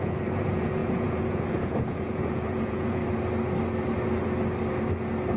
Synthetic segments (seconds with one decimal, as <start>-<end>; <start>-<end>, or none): 0.0-3.0